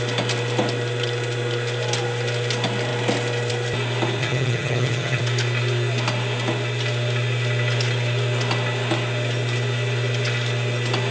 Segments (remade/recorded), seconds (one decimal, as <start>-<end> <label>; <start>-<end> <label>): 0.0-4.2 recorded; 4.2-5.2 remade; 5.2-11.1 recorded